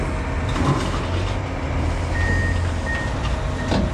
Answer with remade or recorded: recorded